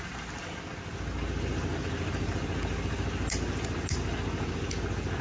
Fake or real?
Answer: real